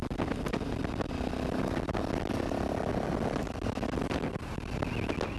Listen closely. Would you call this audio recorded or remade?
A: recorded